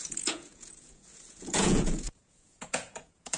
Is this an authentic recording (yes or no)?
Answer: no